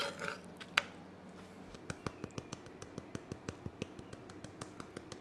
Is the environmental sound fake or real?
real